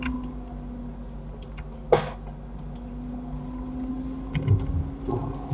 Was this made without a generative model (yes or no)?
yes